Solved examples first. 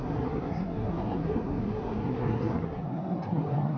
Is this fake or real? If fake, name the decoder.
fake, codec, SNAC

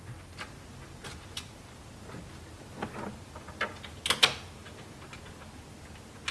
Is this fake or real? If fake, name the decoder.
real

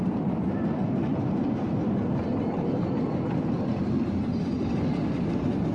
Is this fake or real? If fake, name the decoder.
real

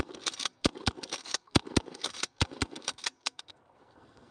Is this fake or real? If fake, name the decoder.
fake, codec, SNAC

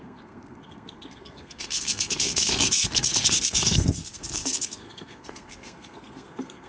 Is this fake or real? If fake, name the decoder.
fake, codec, SNAC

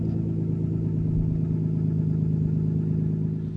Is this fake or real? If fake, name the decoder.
real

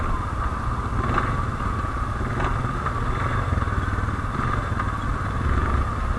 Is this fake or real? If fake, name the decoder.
real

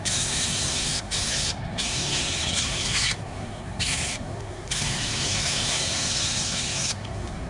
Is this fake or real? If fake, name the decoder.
fake, codec, SNAC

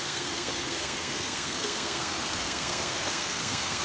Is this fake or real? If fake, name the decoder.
fake, codec, SNAC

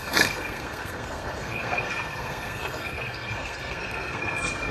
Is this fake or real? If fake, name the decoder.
fake, codec, SNAC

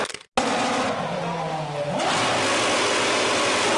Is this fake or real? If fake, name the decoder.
real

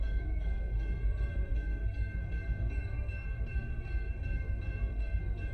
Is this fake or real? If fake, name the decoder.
fake, codec, SNAC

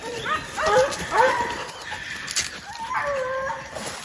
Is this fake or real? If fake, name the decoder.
real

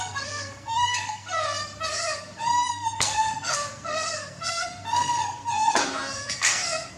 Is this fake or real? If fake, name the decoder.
fake, codec, SNAC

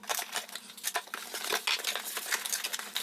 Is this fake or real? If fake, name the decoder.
real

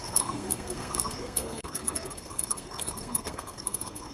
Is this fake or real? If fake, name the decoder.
fake, codec, SNAC